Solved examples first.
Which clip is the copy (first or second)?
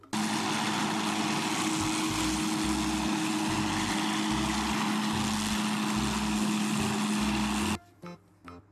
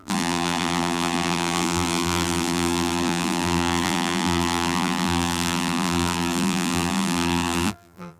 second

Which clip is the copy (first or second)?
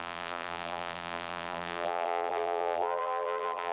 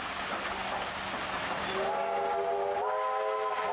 first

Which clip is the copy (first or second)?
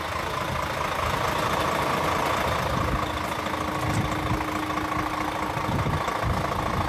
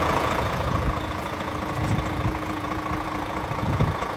second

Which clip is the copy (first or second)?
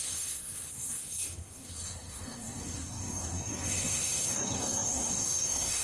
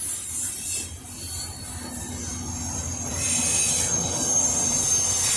first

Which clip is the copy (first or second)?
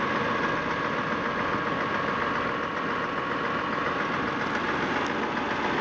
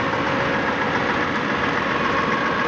second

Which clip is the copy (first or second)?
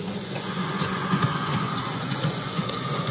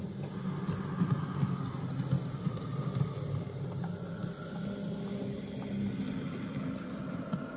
first